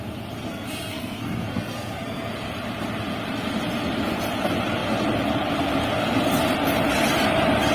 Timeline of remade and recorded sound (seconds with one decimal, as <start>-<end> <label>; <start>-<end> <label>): 0.0-0.5 recorded; 0.5-2.3 remade; 2.3-7.7 recorded